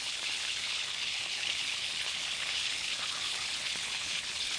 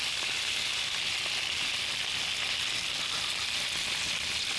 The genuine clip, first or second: second